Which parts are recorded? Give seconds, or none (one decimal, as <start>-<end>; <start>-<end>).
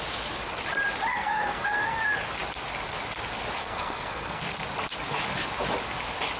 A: 0.0-1.1; 2.0-3.6; 4.4-6.4